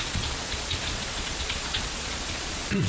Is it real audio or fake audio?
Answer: fake